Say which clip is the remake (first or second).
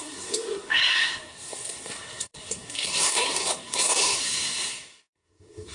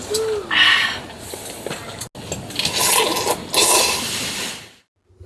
first